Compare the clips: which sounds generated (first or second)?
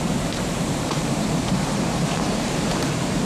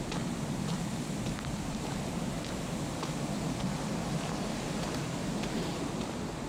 first